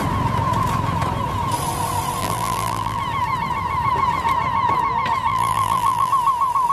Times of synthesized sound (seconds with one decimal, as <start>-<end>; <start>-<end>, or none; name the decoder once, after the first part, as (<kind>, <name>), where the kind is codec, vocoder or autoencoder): 2.2-3.0 (vocoder, BigVGAN v2); 5.3-6.1